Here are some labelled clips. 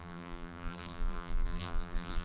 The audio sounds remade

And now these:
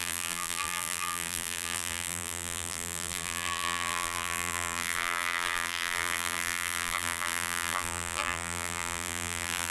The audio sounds remade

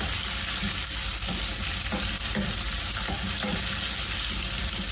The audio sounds recorded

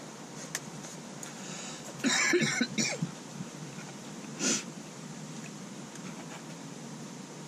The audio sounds recorded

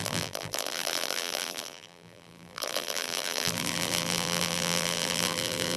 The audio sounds remade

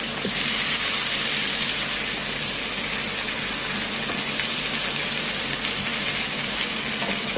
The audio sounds recorded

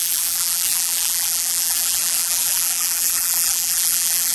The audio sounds remade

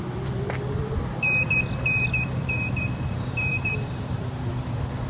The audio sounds remade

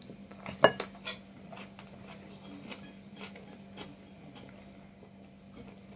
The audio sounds recorded